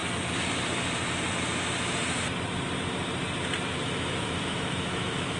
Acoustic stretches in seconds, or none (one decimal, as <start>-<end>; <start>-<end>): 0.0-3.7

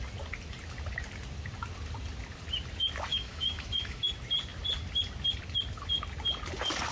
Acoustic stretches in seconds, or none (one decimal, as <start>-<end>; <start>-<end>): 0.0-3.1; 4.1-6.9

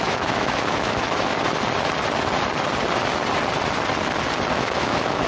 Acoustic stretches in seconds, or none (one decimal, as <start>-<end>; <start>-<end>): 1.3-4.5

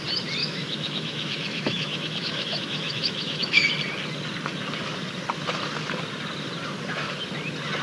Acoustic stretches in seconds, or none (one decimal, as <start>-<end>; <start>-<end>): 0.0-0.4; 3.7-7.8

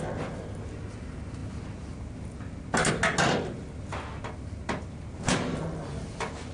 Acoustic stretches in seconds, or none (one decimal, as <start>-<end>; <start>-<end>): 0.0-6.5

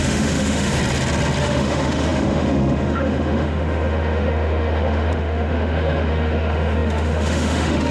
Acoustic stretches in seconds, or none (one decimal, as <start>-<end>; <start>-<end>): 0.8-1.4